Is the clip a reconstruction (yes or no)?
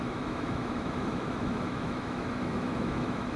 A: yes